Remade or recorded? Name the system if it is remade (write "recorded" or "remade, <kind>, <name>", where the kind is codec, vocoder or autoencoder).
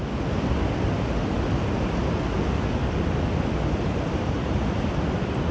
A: recorded